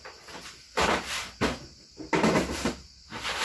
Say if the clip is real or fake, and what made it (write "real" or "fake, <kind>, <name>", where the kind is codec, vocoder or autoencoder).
real